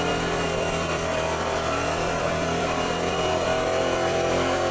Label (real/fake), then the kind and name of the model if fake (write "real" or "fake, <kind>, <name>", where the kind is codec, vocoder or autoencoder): fake, vocoder, BigVGAN v2